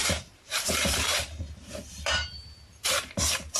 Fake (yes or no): yes